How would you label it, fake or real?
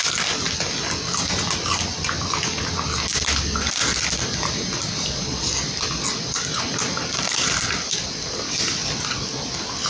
real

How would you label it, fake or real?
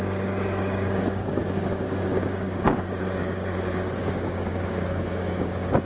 fake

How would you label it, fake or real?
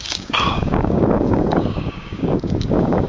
fake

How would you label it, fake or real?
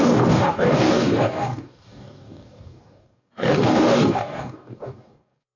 fake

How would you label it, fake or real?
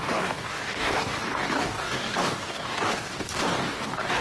fake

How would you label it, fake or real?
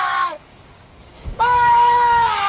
fake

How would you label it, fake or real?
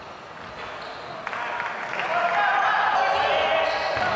real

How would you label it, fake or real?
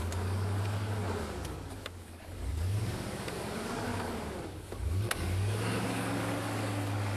fake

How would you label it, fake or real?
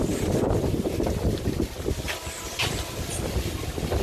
real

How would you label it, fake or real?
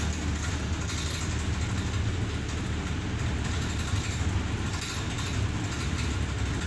real